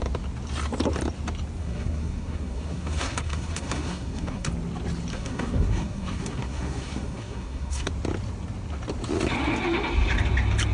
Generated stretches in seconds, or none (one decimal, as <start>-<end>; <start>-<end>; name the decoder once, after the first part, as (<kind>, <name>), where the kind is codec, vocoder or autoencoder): 1.6-4.5 (codec, SNAC); 5.1-7.9

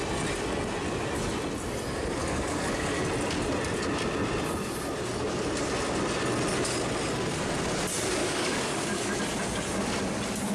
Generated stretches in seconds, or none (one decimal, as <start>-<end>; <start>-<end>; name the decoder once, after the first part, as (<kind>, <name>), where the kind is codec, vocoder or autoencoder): 2.2-3.0 (codec, DAC); 8.2-9.2

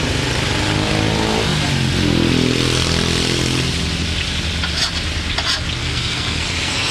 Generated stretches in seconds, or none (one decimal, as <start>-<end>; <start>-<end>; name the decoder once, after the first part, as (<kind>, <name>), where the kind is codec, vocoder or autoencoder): 5.8-6.9 (codec, SNAC)

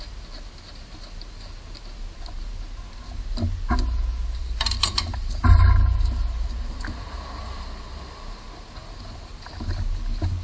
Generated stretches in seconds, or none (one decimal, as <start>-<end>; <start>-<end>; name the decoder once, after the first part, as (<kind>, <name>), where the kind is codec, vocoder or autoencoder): 4.4-8.0 (vocoder, BigVGAN v2); 8.8-9.5